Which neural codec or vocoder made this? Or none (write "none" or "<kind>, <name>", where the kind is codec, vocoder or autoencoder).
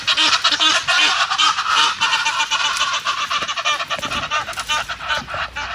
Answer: none